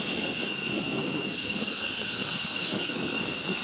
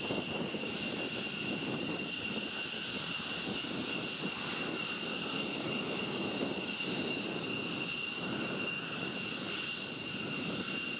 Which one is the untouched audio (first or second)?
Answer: second